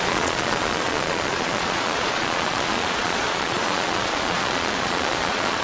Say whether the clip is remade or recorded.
remade